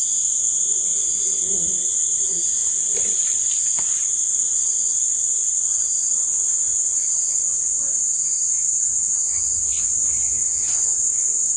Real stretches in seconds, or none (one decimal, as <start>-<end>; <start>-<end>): 2.6-5.6